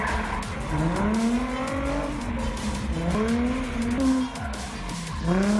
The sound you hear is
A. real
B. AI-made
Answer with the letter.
A